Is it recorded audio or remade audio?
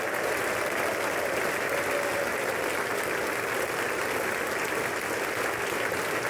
recorded